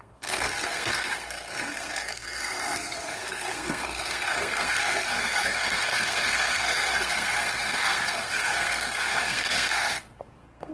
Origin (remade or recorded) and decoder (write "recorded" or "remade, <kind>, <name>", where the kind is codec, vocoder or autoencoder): remade, codec, SNAC